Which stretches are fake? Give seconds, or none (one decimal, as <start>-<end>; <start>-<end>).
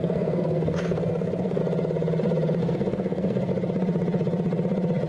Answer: 0.0-1.6; 2.6-3.5